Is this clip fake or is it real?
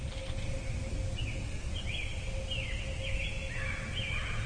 real